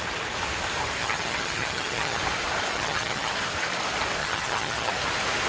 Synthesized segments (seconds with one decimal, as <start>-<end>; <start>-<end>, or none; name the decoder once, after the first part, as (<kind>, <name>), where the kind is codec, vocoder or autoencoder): 1.0-2.2 (vocoder, HiFi-GAN); 2.7-3.3; 4.2-4.9